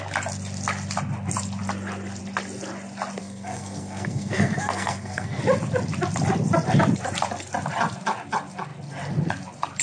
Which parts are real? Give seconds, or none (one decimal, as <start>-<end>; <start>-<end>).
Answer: 0.0-3.2; 5.4-9.8